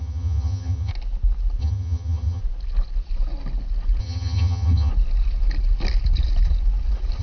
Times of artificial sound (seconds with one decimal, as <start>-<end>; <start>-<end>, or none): 0.0-0.9; 1.6-2.4; 4.0-4.9